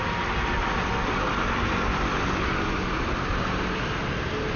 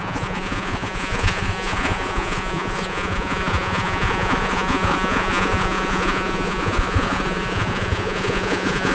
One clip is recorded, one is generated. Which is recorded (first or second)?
first